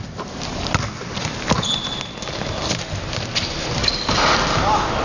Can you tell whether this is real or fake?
real